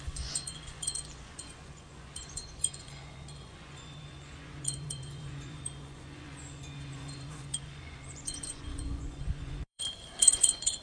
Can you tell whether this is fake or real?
fake